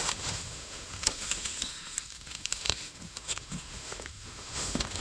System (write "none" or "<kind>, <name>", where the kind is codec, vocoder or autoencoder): autoencoder, DAC-VAE